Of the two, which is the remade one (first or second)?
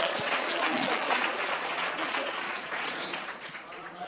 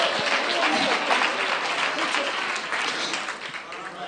first